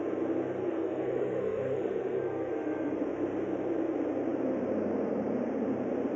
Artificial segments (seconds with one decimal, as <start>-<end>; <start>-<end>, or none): 0.6-3.0